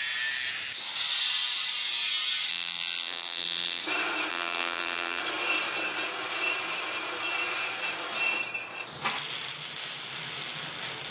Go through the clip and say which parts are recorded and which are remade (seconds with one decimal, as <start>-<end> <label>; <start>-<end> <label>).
0.0-2.5 recorded; 2.5-3.8 remade; 3.8-4.3 recorded; 4.3-5.2 remade; 5.2-11.1 recorded